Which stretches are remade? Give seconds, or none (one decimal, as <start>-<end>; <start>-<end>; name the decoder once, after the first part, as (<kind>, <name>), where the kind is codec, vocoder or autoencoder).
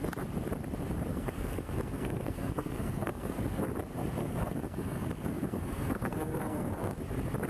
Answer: 1.1-3.6 (codec, SNAC); 4.2-7.0